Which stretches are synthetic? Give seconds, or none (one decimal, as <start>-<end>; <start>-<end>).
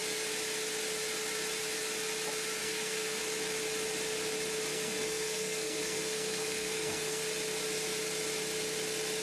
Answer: 2.6-3.2; 4.7-7.2